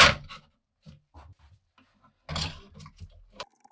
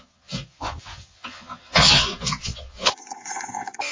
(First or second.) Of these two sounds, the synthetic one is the second